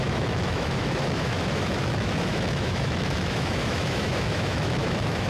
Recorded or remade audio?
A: remade